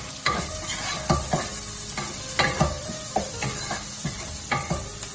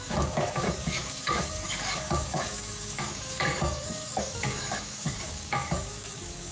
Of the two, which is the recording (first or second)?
first